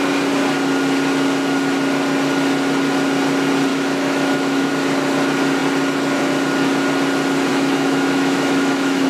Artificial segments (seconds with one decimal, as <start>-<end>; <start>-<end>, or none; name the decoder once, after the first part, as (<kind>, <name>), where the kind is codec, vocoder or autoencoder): 3.7-4.7 (autoencoder, DAC-VAE); 7.5-9.1